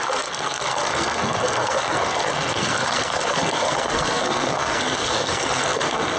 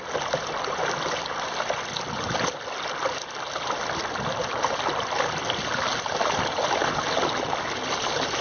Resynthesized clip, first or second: first